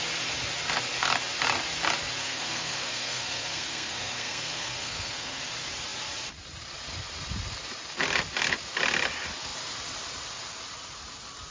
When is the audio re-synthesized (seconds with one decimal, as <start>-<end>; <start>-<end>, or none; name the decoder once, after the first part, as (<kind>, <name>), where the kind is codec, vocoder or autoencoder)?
2.2-5.4 (codec, SNAC)